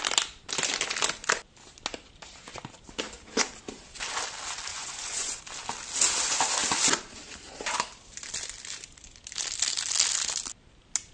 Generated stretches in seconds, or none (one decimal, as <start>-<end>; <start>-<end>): 4.7-5.4